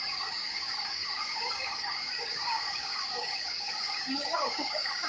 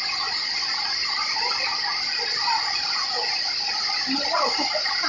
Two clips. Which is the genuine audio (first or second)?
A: second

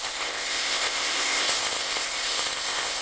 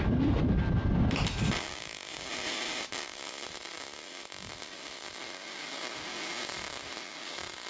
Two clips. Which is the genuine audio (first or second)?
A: second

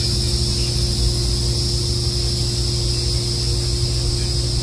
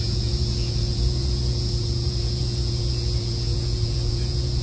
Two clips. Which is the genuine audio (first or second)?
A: first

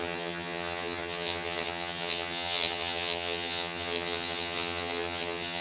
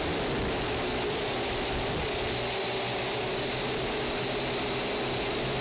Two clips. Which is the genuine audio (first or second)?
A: second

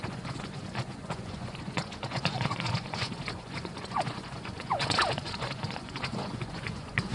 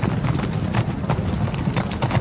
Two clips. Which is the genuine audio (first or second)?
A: second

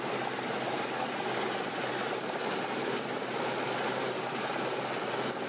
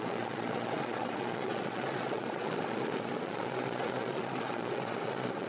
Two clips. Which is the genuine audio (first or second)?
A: first